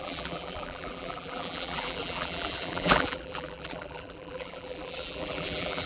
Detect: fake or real fake